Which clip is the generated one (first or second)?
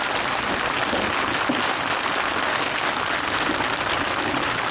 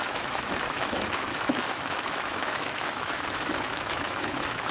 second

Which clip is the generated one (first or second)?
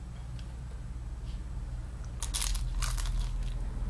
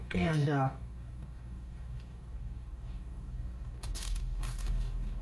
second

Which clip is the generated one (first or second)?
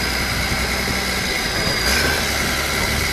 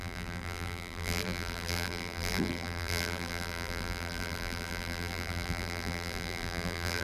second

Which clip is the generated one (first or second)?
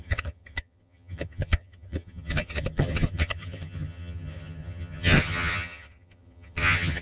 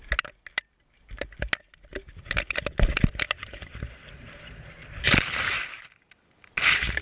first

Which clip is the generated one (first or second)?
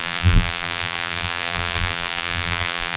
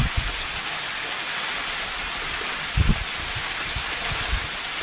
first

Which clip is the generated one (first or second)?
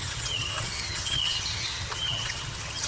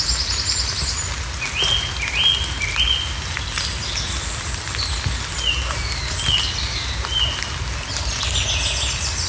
first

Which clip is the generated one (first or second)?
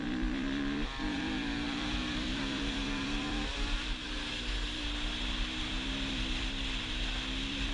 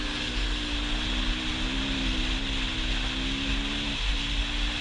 first